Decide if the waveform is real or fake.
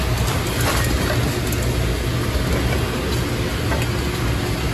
real